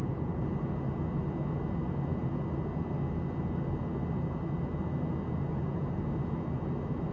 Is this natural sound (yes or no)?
yes